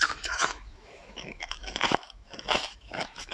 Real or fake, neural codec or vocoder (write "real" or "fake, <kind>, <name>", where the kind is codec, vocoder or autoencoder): fake, autoencoder, DAC-VAE